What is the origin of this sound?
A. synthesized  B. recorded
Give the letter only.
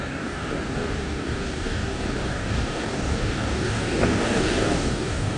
A